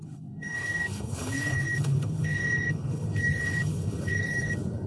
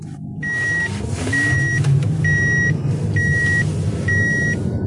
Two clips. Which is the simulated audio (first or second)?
first